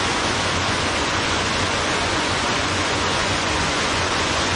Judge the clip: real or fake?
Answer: fake